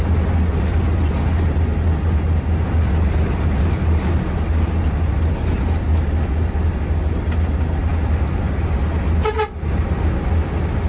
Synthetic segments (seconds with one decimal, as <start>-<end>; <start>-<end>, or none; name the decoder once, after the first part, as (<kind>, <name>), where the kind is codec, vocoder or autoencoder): none